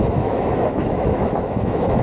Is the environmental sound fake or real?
fake